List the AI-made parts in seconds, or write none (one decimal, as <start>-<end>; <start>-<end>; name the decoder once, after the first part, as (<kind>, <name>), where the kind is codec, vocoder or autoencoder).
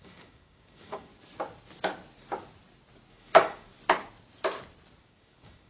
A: 0.0-1.1 (codec, DAC); 3.1-3.7; 5.0-5.7